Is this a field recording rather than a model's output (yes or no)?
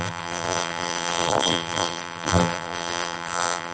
no